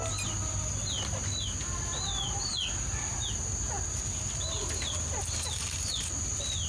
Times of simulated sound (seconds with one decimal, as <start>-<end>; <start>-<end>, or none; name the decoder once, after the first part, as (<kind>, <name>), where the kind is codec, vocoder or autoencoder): none